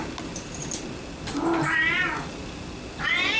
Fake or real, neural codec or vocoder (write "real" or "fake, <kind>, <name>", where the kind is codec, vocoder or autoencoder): real